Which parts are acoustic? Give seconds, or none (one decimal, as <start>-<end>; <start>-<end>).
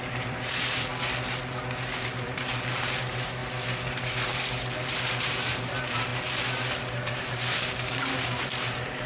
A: 0.9-1.8; 3.4-5.2; 6.1-6.8